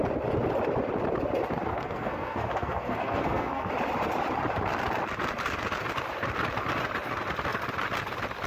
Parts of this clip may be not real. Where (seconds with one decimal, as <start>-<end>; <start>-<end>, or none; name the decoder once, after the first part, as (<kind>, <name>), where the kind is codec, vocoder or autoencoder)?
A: 1.7-3.7 (codec, SNAC)